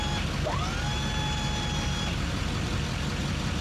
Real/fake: real